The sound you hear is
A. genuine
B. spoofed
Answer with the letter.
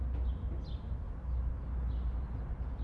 A